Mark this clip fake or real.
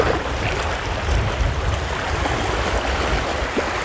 real